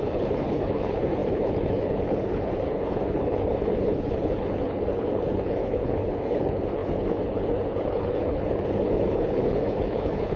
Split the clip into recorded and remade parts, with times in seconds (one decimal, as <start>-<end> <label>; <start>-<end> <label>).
0.0-10.4 remade